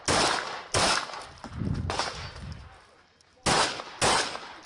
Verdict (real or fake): real